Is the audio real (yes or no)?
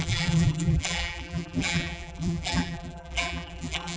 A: no